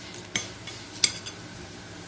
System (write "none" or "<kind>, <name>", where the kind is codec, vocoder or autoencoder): none